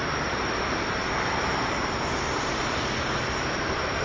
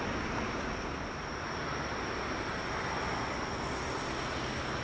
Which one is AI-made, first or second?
first